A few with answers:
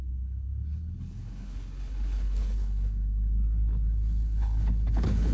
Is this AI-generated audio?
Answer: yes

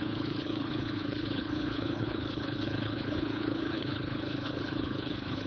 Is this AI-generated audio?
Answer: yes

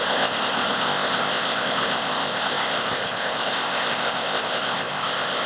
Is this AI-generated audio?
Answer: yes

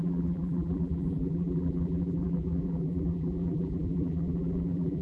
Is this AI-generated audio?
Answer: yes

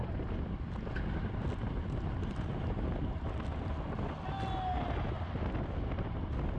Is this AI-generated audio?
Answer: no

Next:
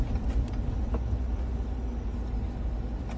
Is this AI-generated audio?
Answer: no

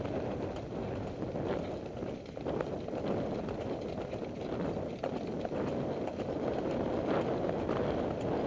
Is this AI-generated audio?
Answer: no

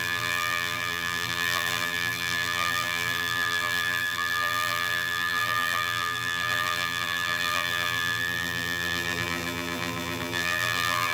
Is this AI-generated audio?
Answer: yes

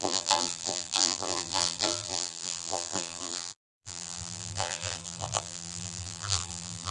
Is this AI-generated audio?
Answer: yes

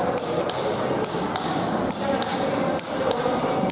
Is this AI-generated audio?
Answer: no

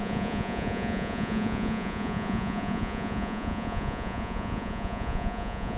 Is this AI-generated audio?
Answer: yes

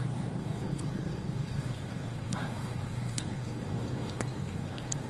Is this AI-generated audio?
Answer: yes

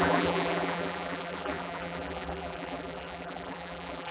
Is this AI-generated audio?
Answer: yes